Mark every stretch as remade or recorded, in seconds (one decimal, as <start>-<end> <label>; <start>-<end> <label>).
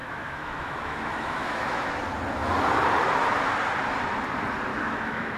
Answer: 0.0-1.9 remade; 1.9-4.7 recorded; 4.7-5.4 remade